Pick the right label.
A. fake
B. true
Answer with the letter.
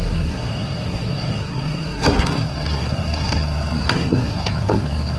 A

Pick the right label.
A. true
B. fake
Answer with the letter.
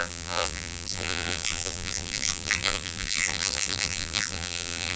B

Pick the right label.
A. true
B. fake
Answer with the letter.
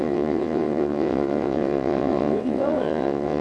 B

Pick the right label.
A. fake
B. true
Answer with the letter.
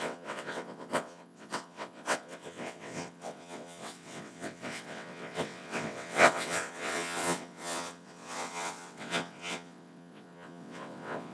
A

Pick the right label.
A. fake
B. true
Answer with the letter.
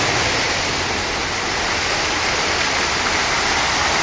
B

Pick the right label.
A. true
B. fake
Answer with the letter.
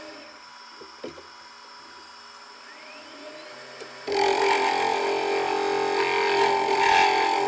A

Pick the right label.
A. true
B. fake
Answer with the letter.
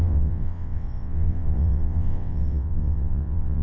B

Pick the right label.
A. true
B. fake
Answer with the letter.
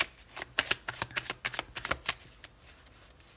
A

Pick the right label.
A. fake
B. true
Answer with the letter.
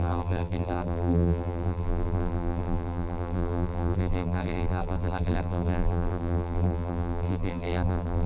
A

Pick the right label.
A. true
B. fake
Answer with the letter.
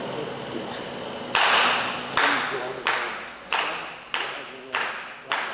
A